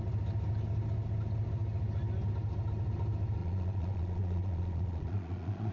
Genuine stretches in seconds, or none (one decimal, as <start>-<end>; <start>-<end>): 0.0-3.4